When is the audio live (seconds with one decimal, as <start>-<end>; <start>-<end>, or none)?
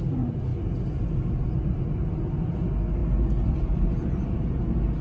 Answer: 0.0-5.0